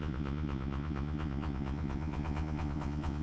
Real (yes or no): no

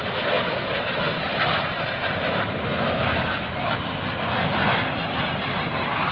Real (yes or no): yes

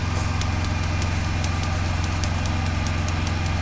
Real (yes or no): yes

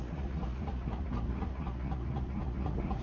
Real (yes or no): no